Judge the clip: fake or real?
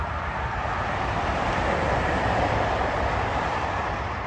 fake